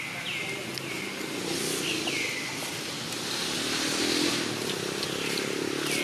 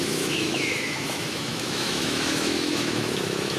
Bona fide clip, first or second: first